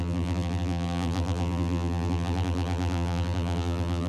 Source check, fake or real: fake